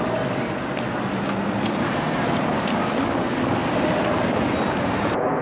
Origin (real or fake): real